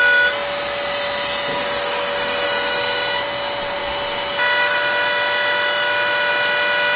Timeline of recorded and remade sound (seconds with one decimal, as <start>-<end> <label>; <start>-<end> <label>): 0.0-1.5 recorded; 1.5-2.8 remade; 2.8-7.0 recorded